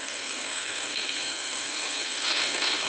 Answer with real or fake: fake